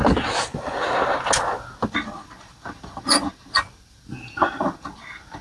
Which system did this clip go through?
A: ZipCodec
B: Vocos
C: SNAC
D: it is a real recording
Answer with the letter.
D